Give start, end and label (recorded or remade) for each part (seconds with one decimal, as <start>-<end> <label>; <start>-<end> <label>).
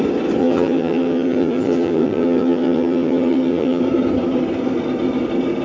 0.0-0.4 recorded; 0.4-3.8 remade; 3.8-5.6 recorded